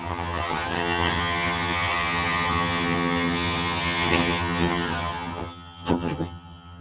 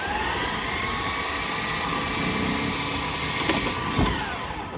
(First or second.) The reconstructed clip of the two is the first